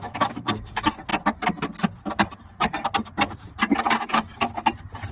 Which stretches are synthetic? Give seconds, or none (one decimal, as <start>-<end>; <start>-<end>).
0.0-1.1; 2.0-5.1